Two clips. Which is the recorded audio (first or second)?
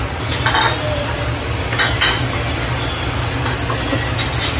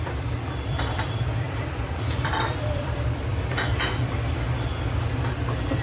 first